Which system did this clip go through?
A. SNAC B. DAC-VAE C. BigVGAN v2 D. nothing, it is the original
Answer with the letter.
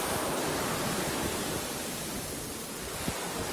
D